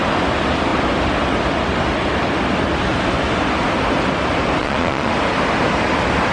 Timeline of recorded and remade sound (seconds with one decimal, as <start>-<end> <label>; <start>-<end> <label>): 0.0-4.6 recorded; 4.6-5.1 remade; 5.1-6.3 recorded